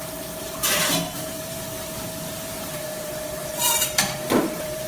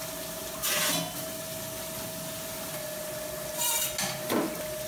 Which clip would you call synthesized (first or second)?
first